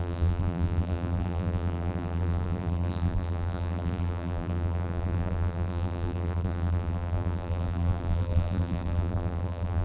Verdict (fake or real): fake